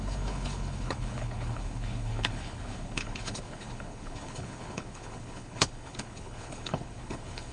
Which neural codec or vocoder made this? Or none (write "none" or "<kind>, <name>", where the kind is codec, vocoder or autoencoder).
codec, HILCodec